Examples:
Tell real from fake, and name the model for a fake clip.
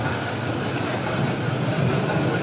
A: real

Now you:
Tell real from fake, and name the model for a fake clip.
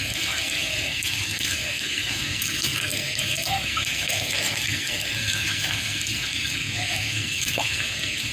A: fake, codec, SNAC